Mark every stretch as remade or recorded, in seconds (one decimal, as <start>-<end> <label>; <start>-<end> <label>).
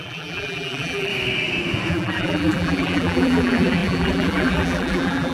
0.0-1.1 remade; 1.1-1.9 recorded; 1.9-5.3 remade